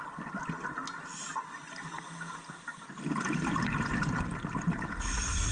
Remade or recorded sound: recorded